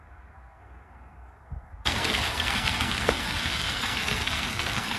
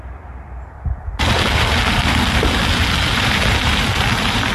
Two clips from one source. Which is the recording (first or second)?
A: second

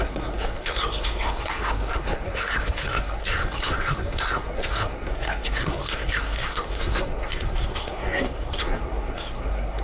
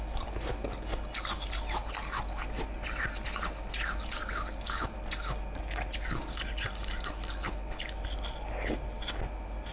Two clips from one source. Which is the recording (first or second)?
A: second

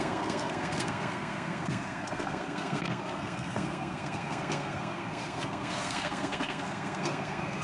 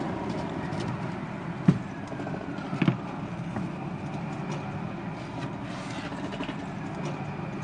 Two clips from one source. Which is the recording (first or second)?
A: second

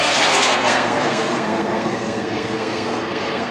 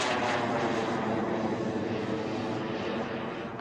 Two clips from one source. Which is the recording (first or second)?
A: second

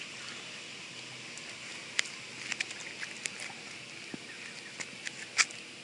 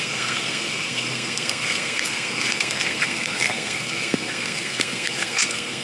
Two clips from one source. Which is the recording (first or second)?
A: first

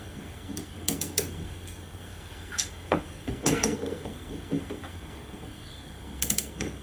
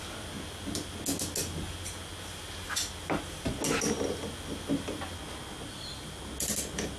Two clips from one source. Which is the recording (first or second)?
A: second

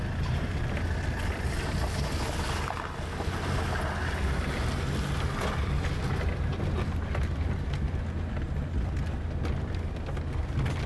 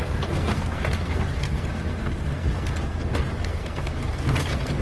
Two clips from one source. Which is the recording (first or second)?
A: first